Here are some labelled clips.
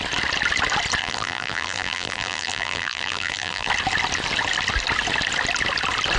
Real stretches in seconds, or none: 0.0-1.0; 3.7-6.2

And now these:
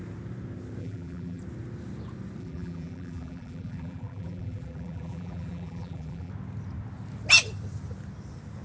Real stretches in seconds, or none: 0.0-0.8; 1.4-2.4; 6.3-8.6

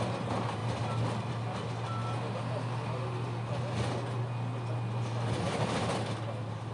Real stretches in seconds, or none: 0.0-6.7

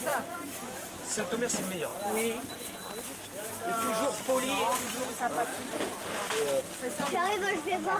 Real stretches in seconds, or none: 1.9-4.4

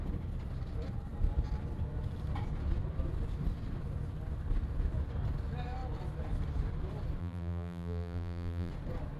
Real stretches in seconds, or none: 0.0-7.2; 8.7-9.2

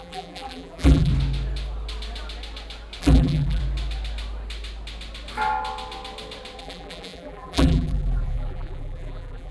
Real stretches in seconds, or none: 1.1-3.0; 3.6-6.6

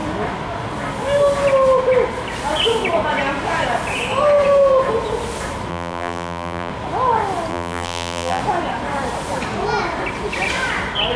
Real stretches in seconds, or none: 0.0-5.7; 6.7-7.5; 8.4-11.2